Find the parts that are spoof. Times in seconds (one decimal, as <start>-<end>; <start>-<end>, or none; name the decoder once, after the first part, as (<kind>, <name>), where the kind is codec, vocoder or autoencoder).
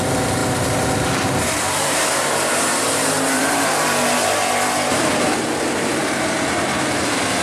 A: 0.0-7.4 (vocoder, BigVGAN v2)